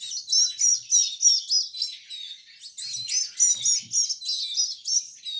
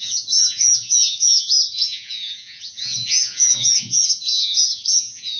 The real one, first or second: first